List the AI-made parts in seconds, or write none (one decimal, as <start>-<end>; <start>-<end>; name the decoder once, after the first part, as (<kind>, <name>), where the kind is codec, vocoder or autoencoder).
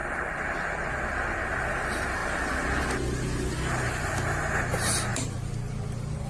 0.0-0.9 (vocoder, BigVGAN v2); 2.2-2.8; 5.1-6.3